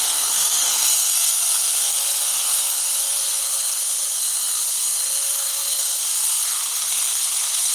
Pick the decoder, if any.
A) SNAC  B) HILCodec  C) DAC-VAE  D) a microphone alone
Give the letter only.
A